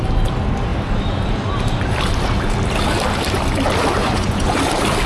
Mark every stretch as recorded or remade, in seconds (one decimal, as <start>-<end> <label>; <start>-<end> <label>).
0.0-4.0 recorded; 4.0-4.6 remade; 4.6-5.1 recorded